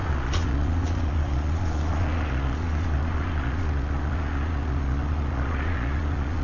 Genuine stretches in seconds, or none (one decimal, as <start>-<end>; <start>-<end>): none